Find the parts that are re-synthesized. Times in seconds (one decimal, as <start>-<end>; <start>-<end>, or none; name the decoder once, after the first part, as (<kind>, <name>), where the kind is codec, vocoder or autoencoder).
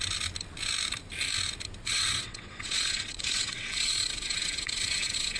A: 1.9-5.4 (vocoder, WaveNeXt)